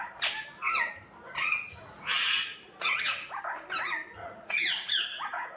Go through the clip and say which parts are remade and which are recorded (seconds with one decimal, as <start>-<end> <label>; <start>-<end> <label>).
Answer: 0.0-1.4 recorded; 1.4-3.4 remade; 3.4-4.2 recorded; 4.2-5.6 remade